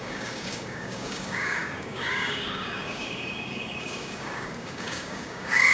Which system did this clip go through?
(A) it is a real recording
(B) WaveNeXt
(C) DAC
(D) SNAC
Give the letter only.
C